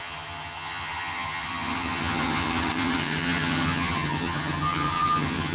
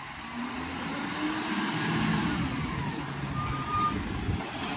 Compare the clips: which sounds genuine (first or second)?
second